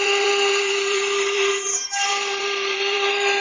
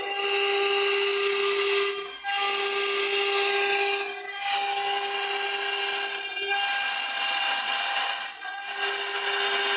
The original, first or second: second